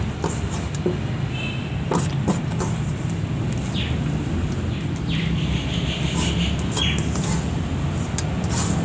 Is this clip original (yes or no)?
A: yes